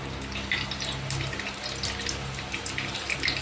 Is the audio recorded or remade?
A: recorded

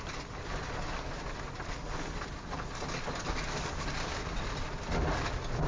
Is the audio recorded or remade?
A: recorded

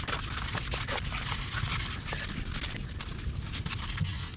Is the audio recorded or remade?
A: recorded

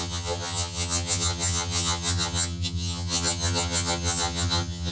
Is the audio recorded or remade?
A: remade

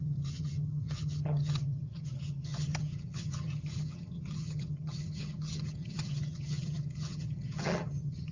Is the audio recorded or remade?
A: remade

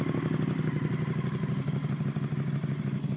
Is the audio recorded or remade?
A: recorded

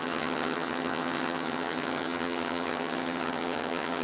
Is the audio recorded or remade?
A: remade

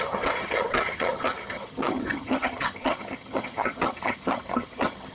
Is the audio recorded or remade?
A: remade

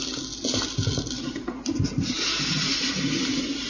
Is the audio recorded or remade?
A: recorded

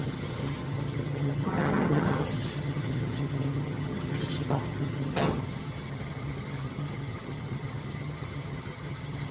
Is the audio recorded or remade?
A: remade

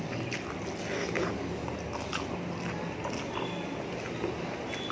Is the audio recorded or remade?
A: recorded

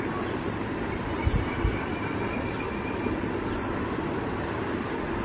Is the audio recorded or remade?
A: recorded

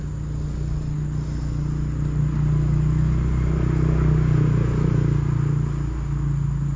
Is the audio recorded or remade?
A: recorded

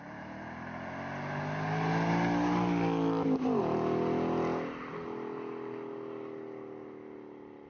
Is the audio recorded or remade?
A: recorded